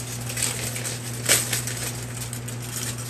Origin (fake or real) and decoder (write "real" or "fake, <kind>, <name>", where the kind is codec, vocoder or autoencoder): real